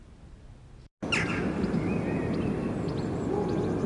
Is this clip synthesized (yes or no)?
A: no